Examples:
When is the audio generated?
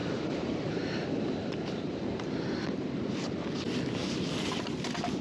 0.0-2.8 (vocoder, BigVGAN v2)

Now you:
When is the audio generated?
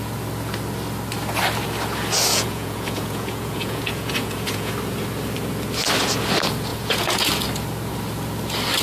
2.3-4.7 (vocoder, Vocos); 6.7-7.3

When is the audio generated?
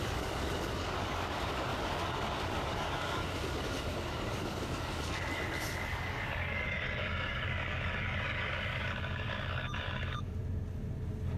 0.0-10.4 (codec, DAC)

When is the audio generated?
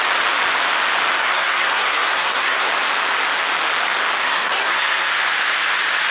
1.2-2.7 (codec, SNAC); 4.2-5.1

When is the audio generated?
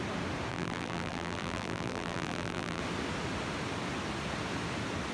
0.5-2.8 (vocoder, BigVGAN v2)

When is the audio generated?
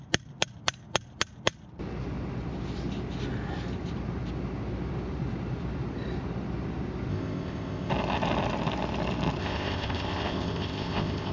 7.1-7.9 (codec, ZipCodec); 9.4-11.3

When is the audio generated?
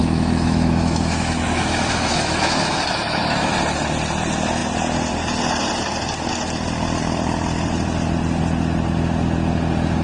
0.0-3.5 (autoencoder, DAC-VAE)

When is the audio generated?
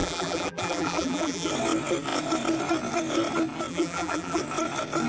0.0-1.5 (vocoder, BigVGAN v2); 3.7-4.4